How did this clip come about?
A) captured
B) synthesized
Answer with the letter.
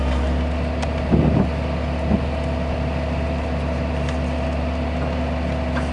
A